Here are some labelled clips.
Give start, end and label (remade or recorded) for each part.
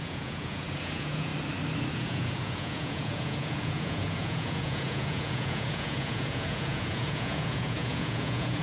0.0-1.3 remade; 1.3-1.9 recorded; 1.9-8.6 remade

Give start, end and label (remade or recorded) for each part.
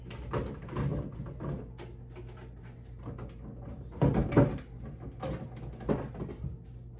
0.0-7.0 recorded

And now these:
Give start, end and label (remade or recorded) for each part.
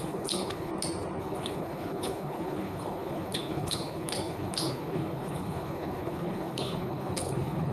0.0-0.7 remade; 0.7-1.2 recorded; 1.2-7.7 remade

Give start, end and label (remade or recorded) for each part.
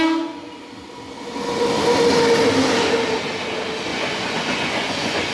0.0-3.9 recorded; 3.9-5.3 remade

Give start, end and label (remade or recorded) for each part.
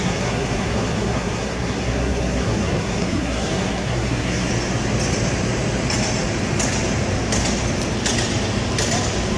0.0-4.5 remade; 4.5-9.4 recorded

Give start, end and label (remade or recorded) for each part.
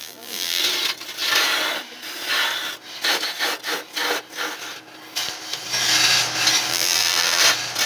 0.0-0.6 remade; 0.6-6.7 recorded; 6.7-7.4 remade; 7.4-7.9 recorded